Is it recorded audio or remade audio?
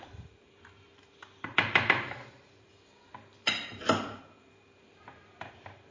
remade